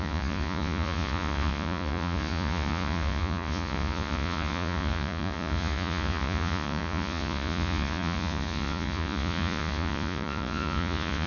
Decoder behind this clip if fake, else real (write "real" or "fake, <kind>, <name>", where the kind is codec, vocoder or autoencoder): fake, vocoder, Vocos